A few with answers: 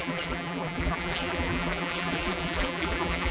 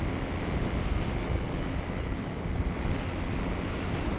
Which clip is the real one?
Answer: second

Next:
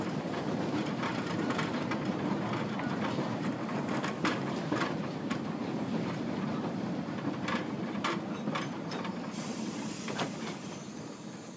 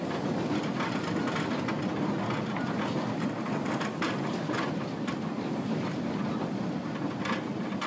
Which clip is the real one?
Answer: second